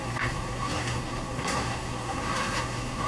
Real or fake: fake